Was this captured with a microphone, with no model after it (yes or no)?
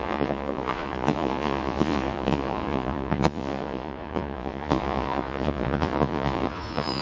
no